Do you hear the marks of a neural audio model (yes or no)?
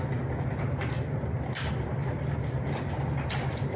no